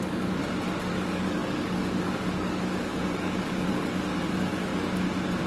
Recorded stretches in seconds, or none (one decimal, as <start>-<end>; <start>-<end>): 0.4-0.9; 4.7-5.5

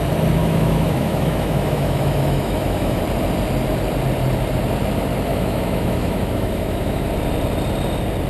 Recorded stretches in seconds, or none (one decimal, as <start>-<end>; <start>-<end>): 0.0-0.4; 3.0-5.3; 7.1-8.3

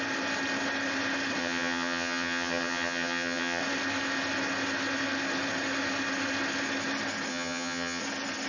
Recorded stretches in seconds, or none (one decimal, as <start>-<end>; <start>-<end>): 0.0-1.4; 3.6-7.3; 8.0-8.5